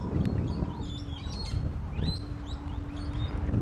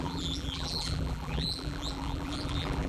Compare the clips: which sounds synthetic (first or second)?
second